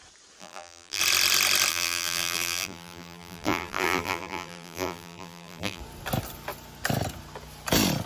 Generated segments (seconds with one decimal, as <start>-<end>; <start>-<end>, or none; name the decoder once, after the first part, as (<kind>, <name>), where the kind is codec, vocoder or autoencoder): 0.4-1.0 (vocoder, BigVGAN v2); 1.7-5.8